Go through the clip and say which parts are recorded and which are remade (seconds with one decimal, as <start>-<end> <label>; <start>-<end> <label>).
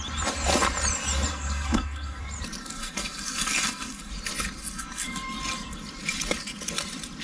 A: 0.0-1.3 recorded; 1.3-2.2 remade; 2.2-2.6 recorded; 2.6-4.1 remade; 4.1-4.6 recorded; 4.6-5.4 remade; 5.4-7.2 recorded